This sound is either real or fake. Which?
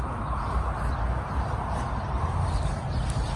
fake